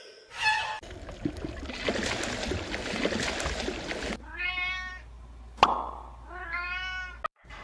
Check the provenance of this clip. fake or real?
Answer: real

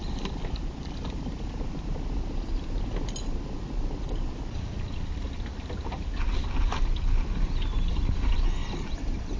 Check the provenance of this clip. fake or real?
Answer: real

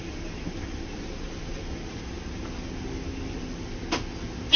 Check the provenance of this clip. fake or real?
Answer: real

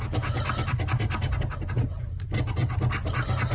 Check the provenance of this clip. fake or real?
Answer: real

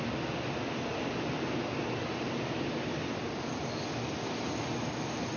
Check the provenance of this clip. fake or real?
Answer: real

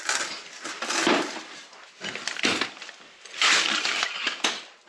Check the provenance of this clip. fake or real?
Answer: real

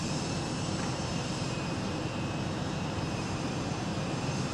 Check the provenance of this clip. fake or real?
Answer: fake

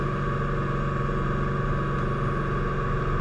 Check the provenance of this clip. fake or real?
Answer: real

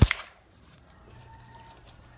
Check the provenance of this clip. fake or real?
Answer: fake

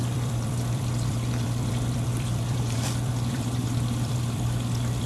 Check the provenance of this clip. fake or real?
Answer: fake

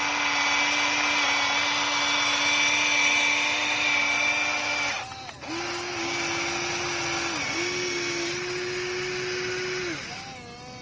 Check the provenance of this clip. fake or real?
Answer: real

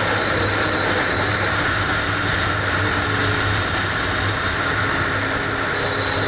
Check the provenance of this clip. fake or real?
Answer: real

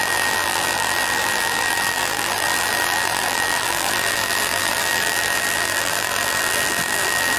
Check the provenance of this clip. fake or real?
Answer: fake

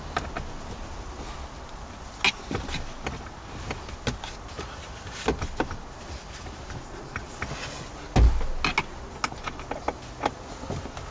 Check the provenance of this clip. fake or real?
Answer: real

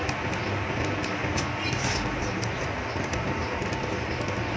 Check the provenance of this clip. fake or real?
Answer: real